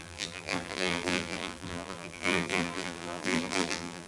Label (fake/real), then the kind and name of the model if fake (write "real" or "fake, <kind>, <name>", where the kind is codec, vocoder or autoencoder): fake, vocoder, BigVGAN v2